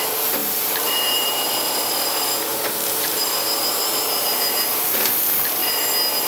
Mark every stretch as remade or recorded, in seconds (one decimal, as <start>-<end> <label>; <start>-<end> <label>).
0.0-0.4 recorded; 0.4-1.5 remade; 1.5-2.5 recorded; 2.5-3.3 remade; 3.3-6.3 recorded